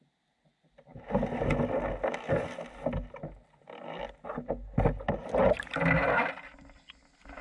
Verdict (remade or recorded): recorded